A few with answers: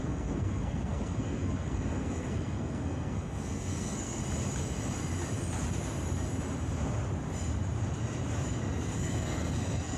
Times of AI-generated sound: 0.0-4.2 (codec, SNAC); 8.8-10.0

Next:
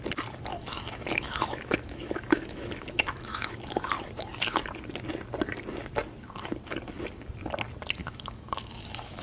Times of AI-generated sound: 0.5-3.9 (autoencoder, DAC-VAE); 8.0-9.2

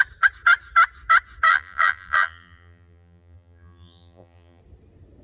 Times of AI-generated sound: 1.5-4.6 (vocoder, BigVGAN v2)